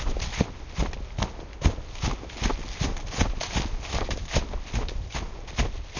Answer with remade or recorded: recorded